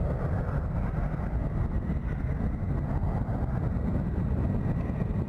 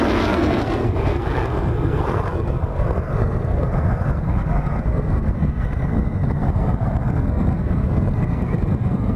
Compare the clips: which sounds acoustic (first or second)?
first